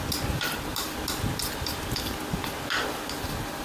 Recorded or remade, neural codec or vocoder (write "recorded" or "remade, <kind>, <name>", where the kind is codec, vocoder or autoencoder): recorded